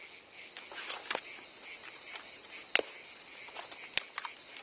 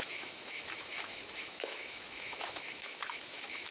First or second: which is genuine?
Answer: first